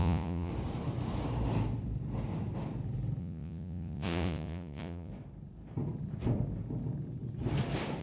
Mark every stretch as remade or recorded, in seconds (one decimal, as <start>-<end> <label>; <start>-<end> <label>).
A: 0.0-0.5 remade; 0.5-3.2 recorded; 3.2-5.1 remade; 5.1-8.0 recorded